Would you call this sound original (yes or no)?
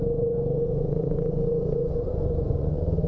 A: no